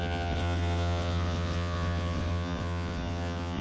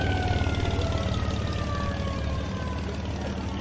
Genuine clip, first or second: second